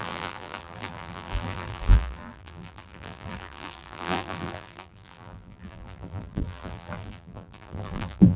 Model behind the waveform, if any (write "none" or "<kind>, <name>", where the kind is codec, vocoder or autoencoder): vocoder, BigVGAN v2